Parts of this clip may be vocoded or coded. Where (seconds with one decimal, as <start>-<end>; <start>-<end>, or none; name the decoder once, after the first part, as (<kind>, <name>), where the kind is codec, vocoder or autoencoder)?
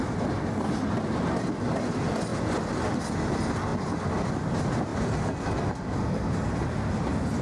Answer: none